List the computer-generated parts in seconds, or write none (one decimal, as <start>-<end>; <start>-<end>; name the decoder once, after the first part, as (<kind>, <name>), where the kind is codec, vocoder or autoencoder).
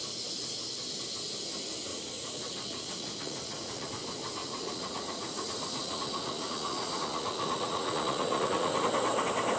1.9-3.9 (vocoder, Vocos); 4.4-8.7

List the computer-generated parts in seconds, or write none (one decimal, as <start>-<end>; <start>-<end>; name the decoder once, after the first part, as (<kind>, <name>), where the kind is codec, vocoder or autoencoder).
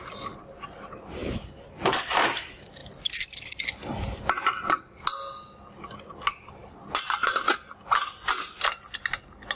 6.6-7.5 (vocoder, BigVGAN v2)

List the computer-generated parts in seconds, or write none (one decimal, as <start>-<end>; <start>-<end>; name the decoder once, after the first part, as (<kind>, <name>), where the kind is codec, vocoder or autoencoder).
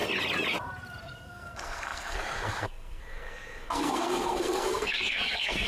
1.0-5.7 (codec, SNAC)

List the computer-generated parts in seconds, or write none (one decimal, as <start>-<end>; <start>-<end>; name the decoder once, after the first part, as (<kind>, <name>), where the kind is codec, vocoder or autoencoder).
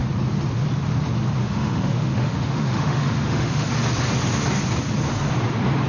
1.4-3.7 (autoencoder, DAC-VAE)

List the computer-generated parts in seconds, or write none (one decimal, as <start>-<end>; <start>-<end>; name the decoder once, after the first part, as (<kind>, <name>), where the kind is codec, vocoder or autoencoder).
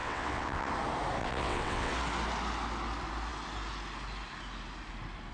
0.0-0.7 (vocoder, WaveNeXt); 1.2-1.9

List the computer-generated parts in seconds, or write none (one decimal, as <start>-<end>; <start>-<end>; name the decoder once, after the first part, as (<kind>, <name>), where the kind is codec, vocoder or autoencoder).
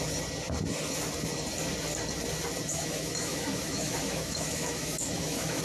2.7-5.6 (autoencoder, DAC-VAE)